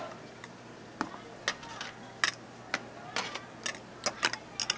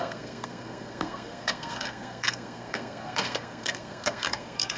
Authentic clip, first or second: first